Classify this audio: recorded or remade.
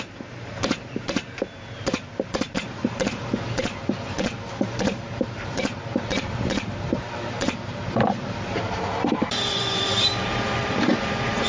remade